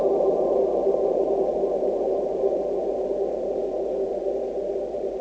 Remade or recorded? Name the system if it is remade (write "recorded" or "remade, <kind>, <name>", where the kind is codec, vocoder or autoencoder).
remade, vocoder, BigVGAN v2